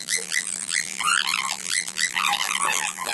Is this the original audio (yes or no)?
no